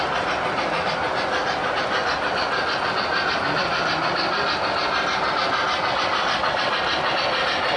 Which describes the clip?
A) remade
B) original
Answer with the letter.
B